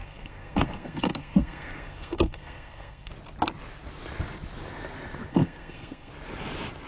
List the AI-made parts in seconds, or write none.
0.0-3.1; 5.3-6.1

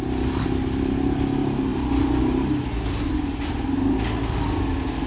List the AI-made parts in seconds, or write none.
none